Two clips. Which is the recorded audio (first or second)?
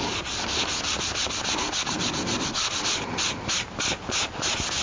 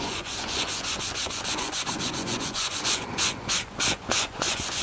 first